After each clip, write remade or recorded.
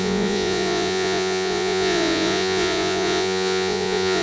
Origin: remade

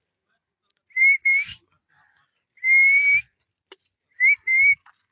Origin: recorded